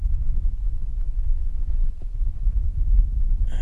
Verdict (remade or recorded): recorded